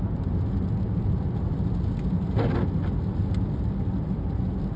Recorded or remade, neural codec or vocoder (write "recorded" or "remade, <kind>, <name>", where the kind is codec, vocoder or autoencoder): recorded